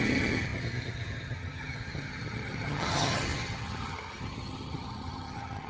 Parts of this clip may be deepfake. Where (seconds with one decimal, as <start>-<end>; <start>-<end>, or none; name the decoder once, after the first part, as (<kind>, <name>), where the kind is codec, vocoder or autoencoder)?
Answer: 0.0-5.7 (vocoder, HiFi-GAN)